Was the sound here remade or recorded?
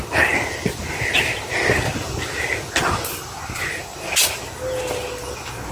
recorded